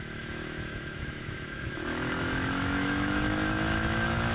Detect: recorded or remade remade